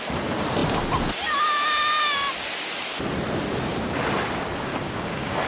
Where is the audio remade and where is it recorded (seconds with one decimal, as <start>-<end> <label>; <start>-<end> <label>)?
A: 0.0-4.7 recorded; 4.7-5.5 remade